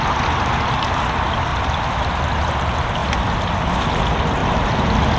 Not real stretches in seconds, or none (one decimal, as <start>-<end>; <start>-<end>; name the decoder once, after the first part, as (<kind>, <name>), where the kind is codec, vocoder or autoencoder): 1.5-2.1 (vocoder, BigVGAN v2); 3.0-4.0